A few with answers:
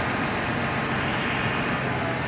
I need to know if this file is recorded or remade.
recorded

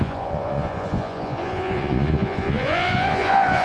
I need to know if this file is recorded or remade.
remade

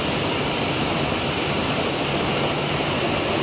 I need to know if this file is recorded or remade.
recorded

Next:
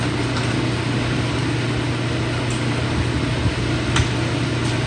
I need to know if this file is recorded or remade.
recorded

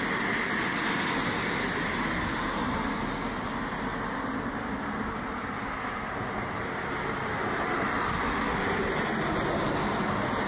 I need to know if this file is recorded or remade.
recorded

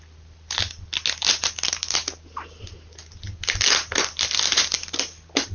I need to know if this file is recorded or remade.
recorded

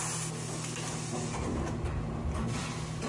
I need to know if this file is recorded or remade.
recorded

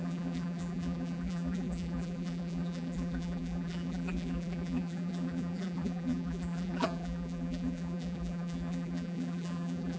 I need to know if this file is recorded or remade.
remade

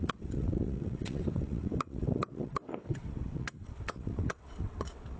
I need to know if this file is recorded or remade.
remade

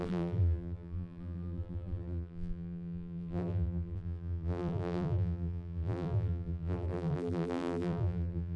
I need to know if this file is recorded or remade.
remade